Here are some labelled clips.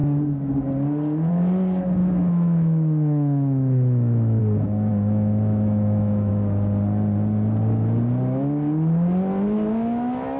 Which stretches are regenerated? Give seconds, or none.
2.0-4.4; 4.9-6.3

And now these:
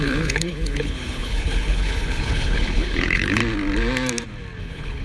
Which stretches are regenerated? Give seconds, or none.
0.0-3.4; 4.6-5.0

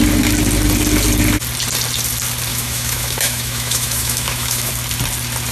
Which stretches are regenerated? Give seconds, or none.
2.5-4.7

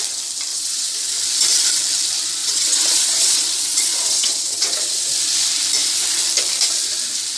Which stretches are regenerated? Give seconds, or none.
0.5-1.1; 2.4-5.1

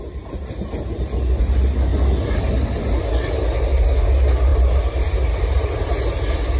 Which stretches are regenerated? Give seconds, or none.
4.5-5.6

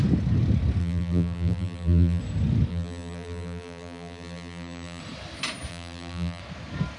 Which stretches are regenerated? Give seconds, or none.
0.8-2.2; 2.7-5.0; 5.7-6.4

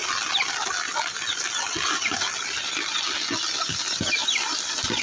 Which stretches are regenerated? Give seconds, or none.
0.0-3.0; 4.2-5.0

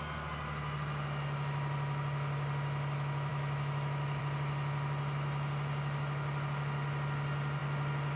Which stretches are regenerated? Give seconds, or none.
3.3-4.2